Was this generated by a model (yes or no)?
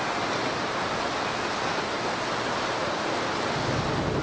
no